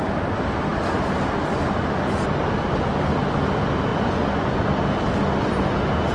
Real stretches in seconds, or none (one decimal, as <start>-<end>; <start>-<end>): 0.0-3.9; 4.6-6.1